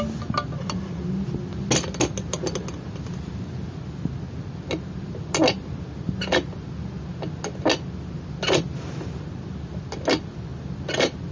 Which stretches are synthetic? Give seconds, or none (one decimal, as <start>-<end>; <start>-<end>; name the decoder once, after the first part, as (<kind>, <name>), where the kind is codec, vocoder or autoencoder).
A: none